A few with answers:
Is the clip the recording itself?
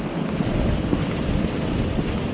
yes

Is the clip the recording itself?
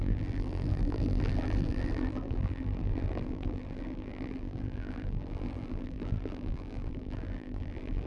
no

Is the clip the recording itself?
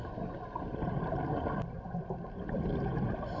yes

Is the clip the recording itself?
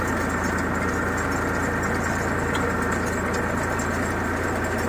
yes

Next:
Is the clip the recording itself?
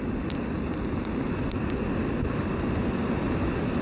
yes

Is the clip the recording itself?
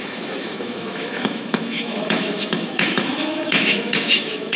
no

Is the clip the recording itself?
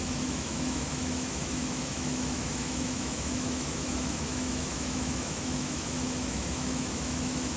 no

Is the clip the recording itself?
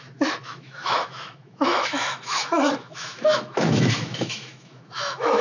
no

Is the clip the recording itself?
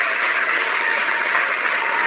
no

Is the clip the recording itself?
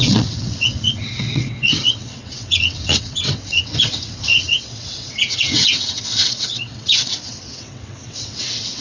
no